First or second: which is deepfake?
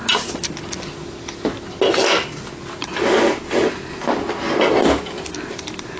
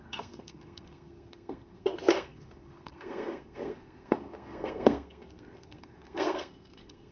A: second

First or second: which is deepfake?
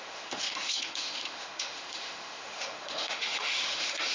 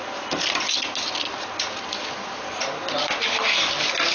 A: first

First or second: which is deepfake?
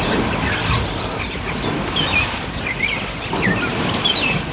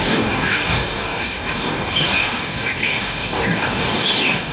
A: second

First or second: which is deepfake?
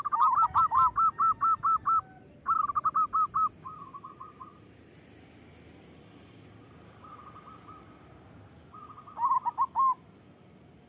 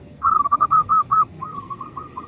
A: second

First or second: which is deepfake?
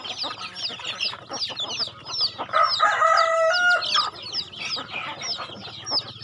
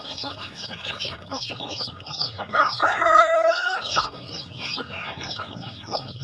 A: second